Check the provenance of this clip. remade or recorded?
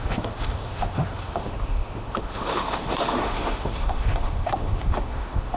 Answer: remade